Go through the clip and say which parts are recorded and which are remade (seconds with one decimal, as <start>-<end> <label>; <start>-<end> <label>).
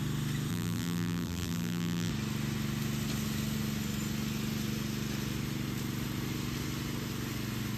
0.0-0.5 recorded; 0.5-2.1 remade; 2.1-7.8 recorded